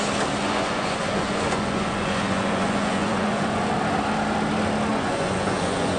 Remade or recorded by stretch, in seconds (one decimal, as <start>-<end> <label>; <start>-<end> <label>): 0.0-0.4 recorded; 0.4-3.7 remade; 3.7-4.9 recorded; 4.9-6.0 remade